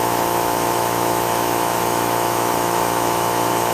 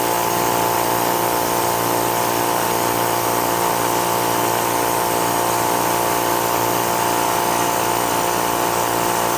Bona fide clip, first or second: second